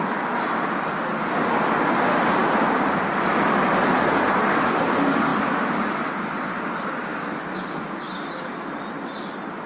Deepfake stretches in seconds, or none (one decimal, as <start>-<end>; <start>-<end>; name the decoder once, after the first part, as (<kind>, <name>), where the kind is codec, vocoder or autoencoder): none